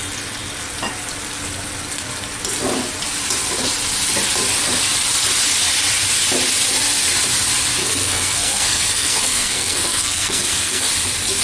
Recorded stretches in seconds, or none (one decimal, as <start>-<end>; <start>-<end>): 0.0-7.8; 10.9-11.4